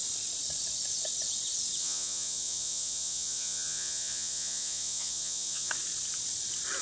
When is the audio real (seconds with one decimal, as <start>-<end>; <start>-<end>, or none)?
0.0-1.8; 5.7-6.8